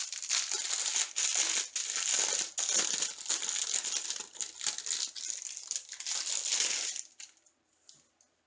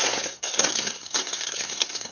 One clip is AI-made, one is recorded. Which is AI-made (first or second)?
second